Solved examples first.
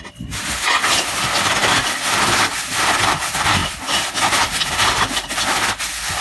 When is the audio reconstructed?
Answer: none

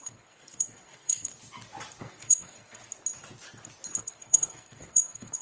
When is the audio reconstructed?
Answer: 0.0-1.3 (codec, SNAC); 2.0-2.8; 4.0-5.4

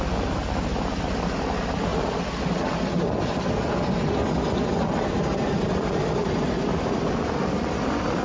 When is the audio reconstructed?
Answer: none

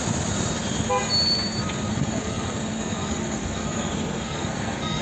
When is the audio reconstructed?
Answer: 1.9-5.0 (codec, SNAC)